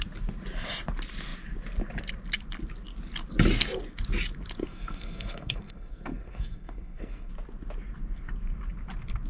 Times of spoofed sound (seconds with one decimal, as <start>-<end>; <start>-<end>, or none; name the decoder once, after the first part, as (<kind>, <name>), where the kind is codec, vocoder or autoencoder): 4.6-7.3 (codec, SNAC)